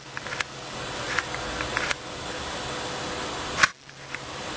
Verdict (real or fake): real